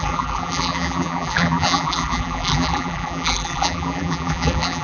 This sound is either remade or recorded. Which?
remade